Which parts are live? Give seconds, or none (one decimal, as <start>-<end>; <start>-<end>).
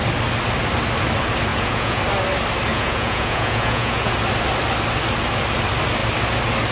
0.0-1.5; 2.0-2.7; 4.1-6.7